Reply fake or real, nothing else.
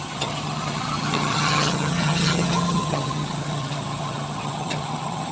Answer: fake